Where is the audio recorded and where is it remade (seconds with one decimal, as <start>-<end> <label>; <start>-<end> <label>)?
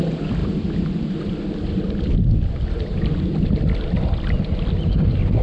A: 0.0-5.4 recorded